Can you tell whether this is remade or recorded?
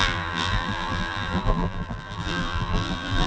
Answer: remade